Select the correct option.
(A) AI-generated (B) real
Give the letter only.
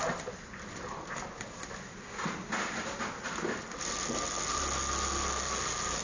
B